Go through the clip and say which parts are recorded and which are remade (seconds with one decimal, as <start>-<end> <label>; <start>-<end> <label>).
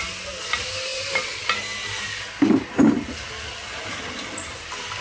0.0-5.0 recorded